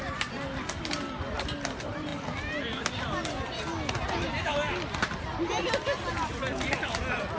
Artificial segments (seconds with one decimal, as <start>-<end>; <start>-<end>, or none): none